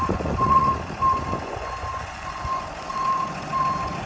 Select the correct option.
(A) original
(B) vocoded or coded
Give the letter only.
B